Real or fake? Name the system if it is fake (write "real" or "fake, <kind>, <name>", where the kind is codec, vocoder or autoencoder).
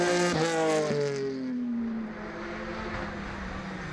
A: real